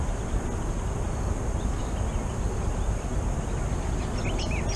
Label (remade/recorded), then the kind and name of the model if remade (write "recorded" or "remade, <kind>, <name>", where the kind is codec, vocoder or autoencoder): recorded